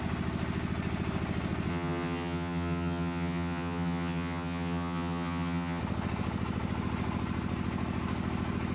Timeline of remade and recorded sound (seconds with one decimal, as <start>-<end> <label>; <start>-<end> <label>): 0.0-1.7 recorded; 1.7-5.8 remade; 5.8-8.7 recorded